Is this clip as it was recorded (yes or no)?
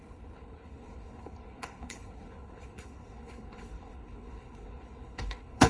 no